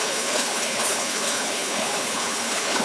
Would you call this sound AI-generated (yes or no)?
yes